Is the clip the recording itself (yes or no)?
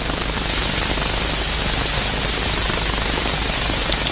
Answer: yes